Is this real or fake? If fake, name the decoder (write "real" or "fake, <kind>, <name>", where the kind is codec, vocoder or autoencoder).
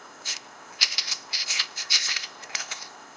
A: fake, codec, ZipCodec